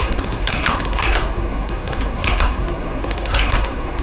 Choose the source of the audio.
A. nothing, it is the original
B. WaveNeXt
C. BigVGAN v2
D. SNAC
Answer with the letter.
D